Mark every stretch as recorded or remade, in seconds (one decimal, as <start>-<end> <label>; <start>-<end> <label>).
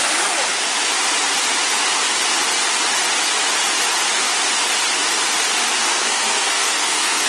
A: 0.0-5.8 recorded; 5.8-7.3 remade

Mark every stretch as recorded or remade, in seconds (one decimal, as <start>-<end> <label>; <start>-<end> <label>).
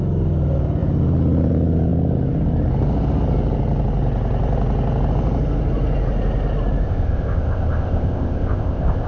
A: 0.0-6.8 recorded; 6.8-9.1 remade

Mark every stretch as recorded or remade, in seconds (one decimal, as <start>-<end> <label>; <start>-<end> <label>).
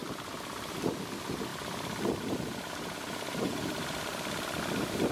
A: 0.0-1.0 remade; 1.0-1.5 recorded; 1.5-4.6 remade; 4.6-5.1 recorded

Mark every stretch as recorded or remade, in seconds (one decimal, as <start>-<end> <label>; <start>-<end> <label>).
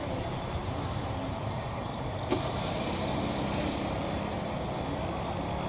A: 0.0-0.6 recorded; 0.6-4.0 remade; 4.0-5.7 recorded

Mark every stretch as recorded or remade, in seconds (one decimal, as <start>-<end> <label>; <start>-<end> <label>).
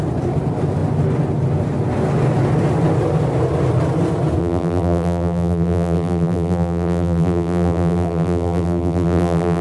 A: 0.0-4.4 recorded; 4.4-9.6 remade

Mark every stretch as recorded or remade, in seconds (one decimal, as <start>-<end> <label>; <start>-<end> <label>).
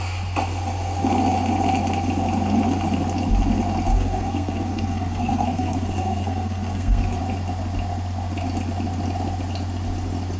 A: 0.0-3.9 recorded; 3.9-7.2 remade; 7.2-10.4 recorded